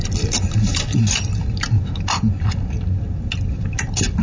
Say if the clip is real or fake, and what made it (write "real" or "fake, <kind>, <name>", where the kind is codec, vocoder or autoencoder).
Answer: real